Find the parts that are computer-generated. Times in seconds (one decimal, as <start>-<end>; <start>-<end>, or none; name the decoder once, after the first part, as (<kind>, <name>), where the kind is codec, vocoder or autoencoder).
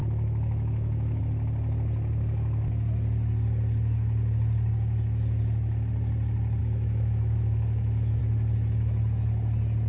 0.0-1.2 (autoencoder, DAC-VAE); 6.6-8.2